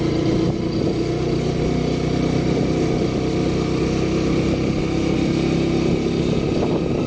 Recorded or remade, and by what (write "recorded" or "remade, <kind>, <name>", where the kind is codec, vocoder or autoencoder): recorded